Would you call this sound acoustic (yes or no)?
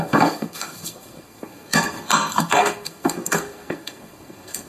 no